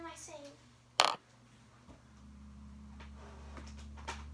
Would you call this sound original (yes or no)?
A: yes